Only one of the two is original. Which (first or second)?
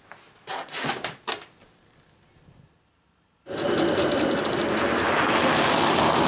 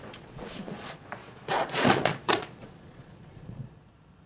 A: first